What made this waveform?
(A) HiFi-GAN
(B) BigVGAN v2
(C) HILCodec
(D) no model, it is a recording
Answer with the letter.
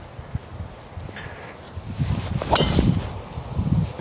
D